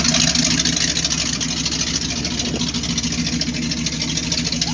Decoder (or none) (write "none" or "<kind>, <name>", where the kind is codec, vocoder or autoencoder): none